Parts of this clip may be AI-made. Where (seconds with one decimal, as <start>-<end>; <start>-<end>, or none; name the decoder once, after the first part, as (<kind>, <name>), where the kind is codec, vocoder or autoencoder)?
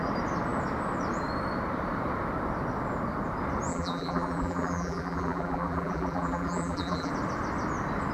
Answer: 3.7-7.1 (vocoder, BigVGAN v2)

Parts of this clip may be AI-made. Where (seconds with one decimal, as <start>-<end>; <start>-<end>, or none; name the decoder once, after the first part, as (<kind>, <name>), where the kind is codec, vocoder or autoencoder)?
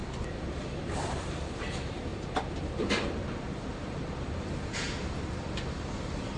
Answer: 0.0-6.4 (vocoder, BigVGAN v2)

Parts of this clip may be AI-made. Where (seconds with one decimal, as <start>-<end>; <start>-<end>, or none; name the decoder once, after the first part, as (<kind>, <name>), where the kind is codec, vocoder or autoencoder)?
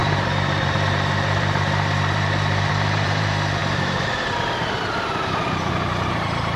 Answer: 0.0-6.6 (vocoder, BigVGAN v2)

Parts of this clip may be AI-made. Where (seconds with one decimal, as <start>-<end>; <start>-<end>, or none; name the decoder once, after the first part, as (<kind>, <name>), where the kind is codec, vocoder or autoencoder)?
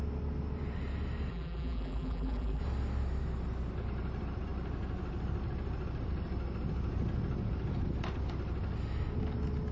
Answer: 1.3-2.6 (vocoder, BigVGAN v2)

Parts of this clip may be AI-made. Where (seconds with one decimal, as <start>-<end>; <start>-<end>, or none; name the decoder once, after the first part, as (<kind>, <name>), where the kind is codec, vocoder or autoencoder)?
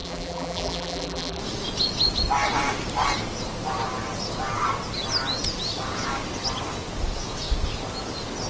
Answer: 0.0-1.4 (vocoder, BigVGAN v2)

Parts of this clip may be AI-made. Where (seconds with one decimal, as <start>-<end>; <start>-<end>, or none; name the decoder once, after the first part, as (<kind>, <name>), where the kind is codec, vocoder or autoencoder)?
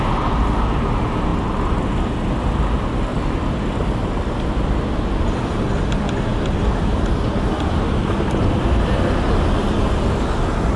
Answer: 1.3-1.9 (vocoder, BigVGAN v2); 6.3-9.8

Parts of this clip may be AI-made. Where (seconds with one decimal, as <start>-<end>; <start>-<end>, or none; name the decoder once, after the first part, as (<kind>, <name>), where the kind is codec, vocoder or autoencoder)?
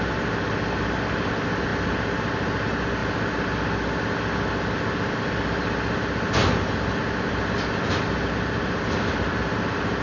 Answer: 1.7-2.3 (vocoder, BigVGAN v2)